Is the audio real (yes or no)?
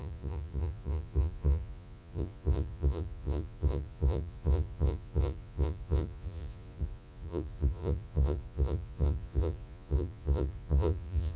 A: no